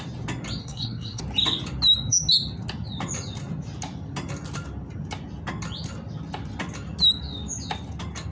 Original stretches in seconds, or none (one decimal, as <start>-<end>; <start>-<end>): 0.0-0.6; 1.2-8.3